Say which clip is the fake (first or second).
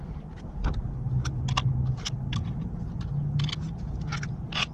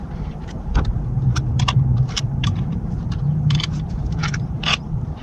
second